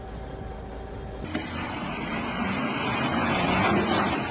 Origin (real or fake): real